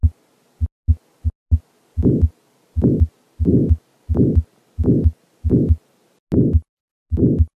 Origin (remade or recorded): recorded